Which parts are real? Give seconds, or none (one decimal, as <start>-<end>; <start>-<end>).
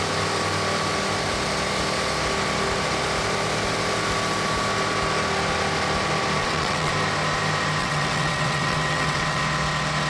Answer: 0.0-6.4; 6.9-7.8; 9.4-10.1